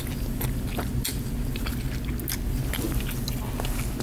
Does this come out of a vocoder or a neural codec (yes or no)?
no